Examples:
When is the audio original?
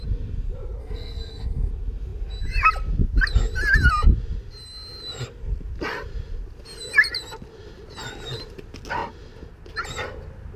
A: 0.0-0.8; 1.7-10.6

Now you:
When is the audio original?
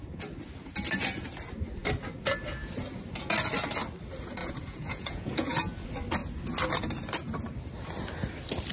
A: 0.0-4.4; 5.5-8.7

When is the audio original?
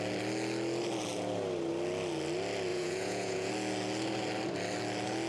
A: 0.0-2.7; 3.5-5.3